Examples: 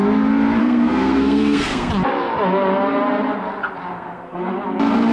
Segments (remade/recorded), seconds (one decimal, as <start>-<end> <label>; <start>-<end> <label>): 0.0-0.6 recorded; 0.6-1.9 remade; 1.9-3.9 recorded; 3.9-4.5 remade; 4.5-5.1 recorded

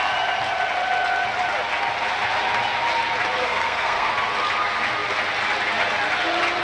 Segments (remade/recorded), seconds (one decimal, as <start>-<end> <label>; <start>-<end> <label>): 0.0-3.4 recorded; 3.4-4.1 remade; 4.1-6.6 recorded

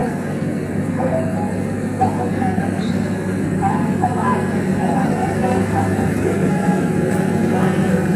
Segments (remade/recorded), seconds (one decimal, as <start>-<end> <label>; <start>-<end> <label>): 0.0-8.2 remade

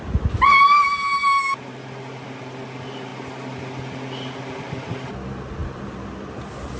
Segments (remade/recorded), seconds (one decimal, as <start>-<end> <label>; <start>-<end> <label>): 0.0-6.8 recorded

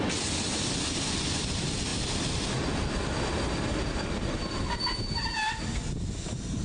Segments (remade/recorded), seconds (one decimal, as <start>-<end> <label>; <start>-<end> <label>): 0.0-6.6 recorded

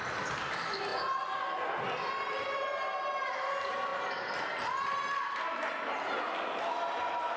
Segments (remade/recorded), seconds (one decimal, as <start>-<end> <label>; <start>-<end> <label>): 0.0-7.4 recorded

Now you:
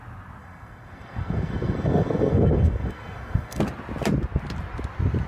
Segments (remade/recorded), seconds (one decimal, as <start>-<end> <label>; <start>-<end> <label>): 0.0-0.4 recorded; 0.4-3.6 remade; 3.6-5.3 recorded

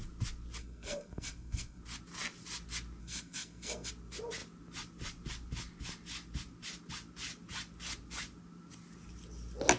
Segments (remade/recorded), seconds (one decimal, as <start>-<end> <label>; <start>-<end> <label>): 0.0-0.6 recorded; 0.6-1.8 remade; 1.8-3.0 recorded; 3.0-3.9 remade; 3.9-9.8 recorded